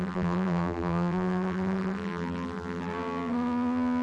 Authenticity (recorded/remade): remade